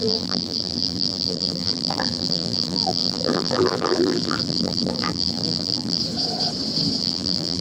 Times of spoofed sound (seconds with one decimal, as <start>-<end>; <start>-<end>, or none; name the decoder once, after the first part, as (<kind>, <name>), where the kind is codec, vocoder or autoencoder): 0.0-6.0 (vocoder, BigVGAN v2); 7.0-7.6